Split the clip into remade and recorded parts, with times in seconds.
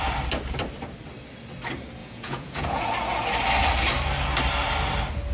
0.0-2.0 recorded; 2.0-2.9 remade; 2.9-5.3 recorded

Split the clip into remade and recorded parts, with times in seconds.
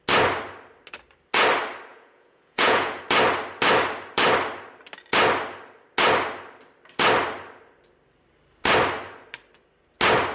0.0-1.9 recorded; 1.9-3.0 remade; 3.0-10.3 recorded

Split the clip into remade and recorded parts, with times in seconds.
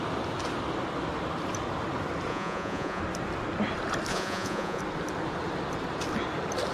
0.0-2.3 recorded; 2.3-3.0 remade; 3.0-4.1 recorded; 4.1-4.8 remade; 4.8-6.7 recorded